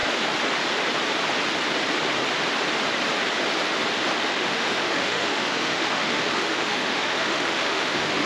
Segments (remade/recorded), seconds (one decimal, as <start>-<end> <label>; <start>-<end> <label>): 0.0-4.3 recorded; 4.3-8.3 remade